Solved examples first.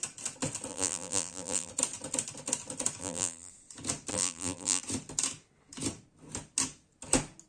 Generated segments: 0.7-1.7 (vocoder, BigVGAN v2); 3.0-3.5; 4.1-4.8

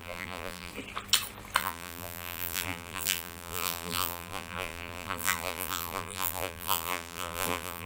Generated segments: 0.0-0.7 (vocoder, BigVGAN v2); 1.6-7.9

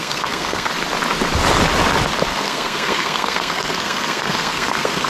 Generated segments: 0.0-0.7 (codec, SNAC); 2.3-5.1

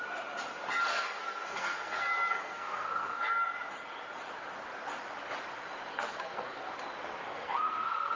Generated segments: 0.9-3.7 (codec, SNAC); 5.9-6.7; 7.3-8.2

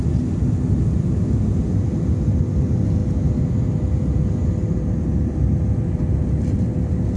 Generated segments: none